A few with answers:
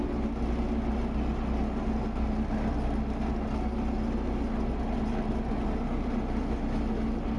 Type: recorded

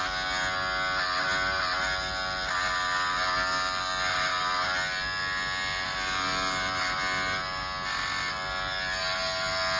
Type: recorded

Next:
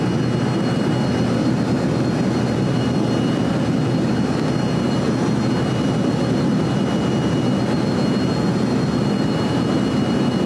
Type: recorded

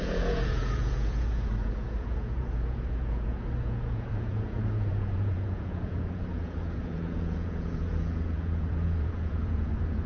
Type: remade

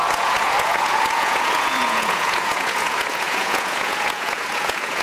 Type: remade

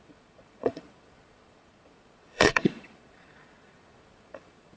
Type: remade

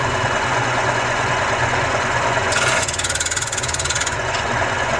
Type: remade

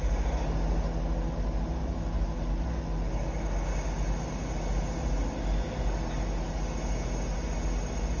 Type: recorded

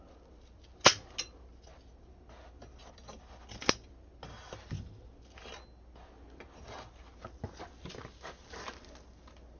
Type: recorded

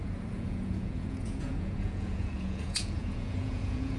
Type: remade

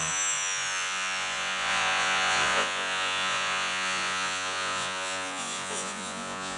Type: remade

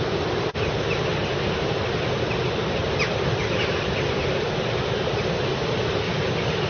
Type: recorded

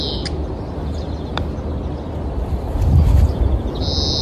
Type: recorded